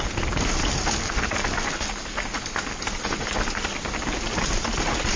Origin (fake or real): real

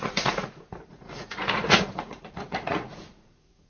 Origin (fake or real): fake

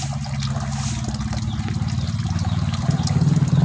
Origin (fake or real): real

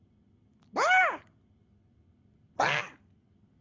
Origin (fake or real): real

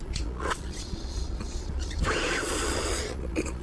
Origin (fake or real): fake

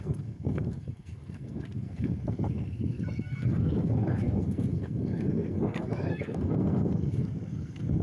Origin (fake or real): fake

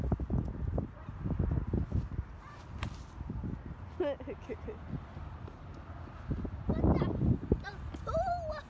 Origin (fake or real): real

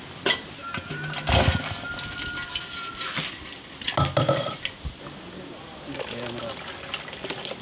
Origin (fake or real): real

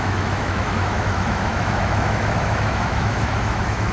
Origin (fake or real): fake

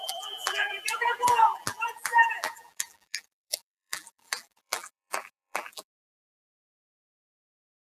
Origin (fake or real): fake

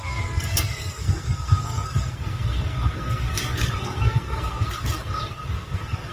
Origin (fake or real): fake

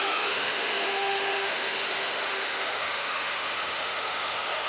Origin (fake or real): fake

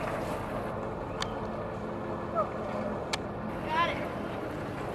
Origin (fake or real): real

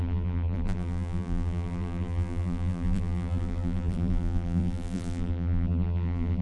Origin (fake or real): fake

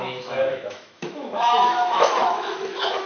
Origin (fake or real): fake